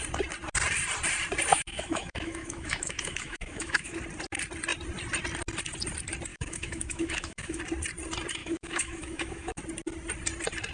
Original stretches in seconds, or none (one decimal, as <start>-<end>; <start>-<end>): 0.0-1.5; 4.0-6.3; 7.6-8.4; 9.6-10.7